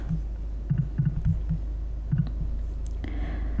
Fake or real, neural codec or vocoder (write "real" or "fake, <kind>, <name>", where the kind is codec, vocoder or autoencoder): real